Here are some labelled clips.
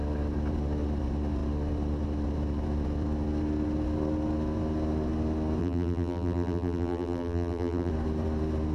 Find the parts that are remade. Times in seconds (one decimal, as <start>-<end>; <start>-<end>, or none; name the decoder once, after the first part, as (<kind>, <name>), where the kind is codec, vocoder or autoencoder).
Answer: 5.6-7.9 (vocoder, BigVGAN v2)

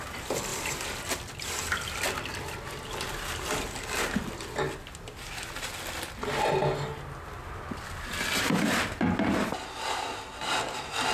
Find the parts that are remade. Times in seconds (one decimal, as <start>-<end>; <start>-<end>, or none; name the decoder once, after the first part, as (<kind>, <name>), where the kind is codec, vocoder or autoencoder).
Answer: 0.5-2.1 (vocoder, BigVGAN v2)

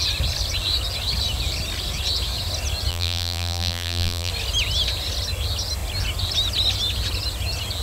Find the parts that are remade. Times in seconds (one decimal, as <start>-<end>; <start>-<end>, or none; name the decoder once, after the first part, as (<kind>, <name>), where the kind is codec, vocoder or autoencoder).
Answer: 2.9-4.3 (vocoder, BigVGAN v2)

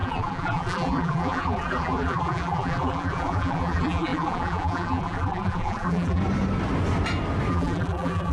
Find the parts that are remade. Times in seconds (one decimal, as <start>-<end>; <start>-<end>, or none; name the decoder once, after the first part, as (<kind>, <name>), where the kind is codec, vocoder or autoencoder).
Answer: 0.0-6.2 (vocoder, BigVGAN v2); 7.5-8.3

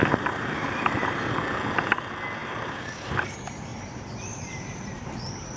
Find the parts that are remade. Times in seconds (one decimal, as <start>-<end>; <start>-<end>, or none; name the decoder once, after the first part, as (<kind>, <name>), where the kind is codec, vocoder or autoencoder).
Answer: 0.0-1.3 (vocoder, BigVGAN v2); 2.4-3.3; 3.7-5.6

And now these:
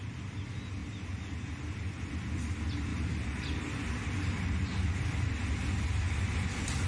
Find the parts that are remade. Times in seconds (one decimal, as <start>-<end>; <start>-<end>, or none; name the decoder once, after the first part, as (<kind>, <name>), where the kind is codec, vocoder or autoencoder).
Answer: 0.8-2.1 (vocoder, BigVGAN v2); 2.9-5.1

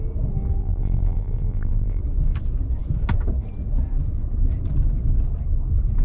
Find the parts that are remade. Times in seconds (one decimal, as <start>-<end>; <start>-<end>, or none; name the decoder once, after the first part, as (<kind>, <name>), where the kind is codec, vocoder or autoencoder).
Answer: 0.6-2.0 (vocoder, BigVGAN v2)